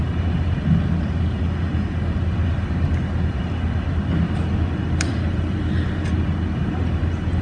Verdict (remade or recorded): recorded